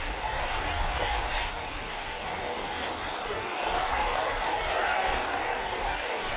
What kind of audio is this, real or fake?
fake